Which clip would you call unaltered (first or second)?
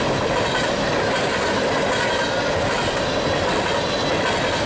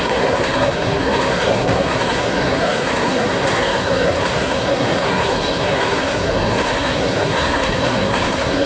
first